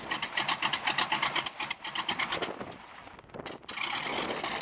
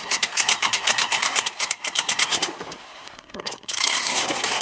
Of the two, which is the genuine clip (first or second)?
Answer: first